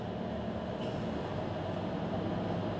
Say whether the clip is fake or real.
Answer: real